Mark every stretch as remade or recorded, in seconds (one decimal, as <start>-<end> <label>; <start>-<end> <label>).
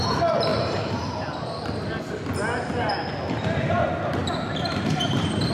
0.0-0.5 recorded; 0.5-1.3 remade; 1.3-4.2 recorded; 4.2-5.5 remade